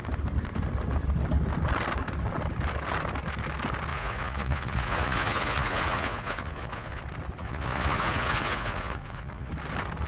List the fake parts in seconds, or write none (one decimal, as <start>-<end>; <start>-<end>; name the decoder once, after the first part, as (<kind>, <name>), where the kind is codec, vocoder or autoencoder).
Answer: 3.9-7.0 (vocoder, Vocos); 7.4-9.5